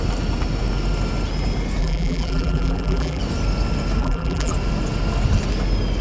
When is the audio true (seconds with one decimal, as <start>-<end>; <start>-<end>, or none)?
0.0-1.8; 3.2-4.0; 4.5-6.0